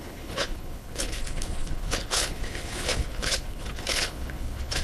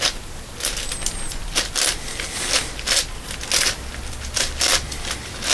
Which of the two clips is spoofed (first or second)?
first